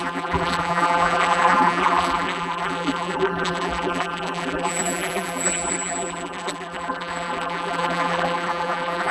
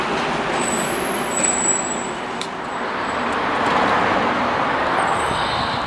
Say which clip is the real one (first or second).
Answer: second